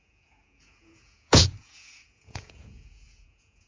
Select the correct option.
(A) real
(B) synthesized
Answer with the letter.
B